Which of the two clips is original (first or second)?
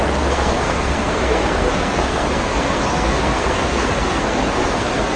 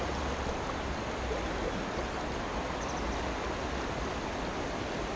second